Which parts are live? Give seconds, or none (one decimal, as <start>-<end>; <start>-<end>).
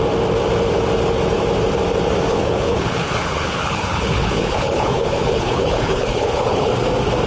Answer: 0.0-2.3; 6.7-7.3